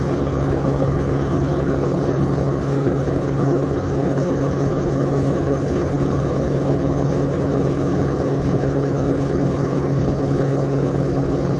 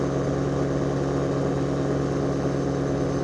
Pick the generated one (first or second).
first